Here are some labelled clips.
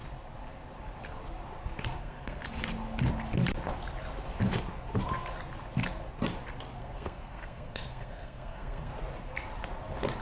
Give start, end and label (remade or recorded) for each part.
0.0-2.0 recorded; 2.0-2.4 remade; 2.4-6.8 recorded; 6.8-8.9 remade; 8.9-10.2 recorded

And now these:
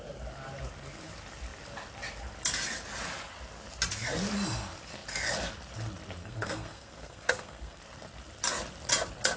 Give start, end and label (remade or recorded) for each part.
0.0-6.2 recorded; 6.2-7.8 remade; 7.8-9.4 recorded

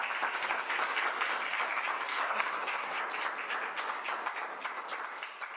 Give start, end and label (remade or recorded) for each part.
0.0-2.1 recorded; 2.1-3.0 remade; 3.0-5.6 recorded

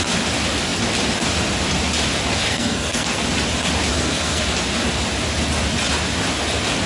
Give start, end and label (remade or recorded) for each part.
0.0-2.5 recorded; 2.5-3.2 remade; 3.2-3.9 recorded; 3.9-4.4 remade; 4.4-6.9 recorded

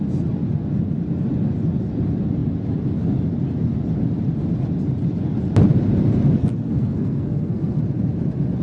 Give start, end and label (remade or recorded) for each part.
0.0-6.4 recorded; 6.4-7.8 remade; 7.8-8.6 recorded